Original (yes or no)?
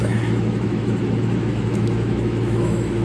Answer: no